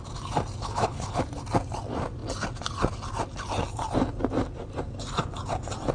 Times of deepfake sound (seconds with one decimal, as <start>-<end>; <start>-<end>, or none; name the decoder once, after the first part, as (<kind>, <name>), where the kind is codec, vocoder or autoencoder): 0.6-1.2 (codec, HILCodec)